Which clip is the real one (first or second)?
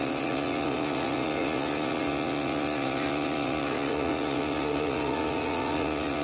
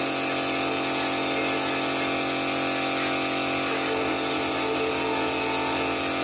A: second